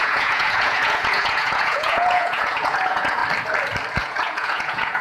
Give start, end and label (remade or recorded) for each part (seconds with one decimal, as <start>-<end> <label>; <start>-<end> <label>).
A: 0.0-3.2 remade; 3.2-4.0 recorded; 4.0-5.0 remade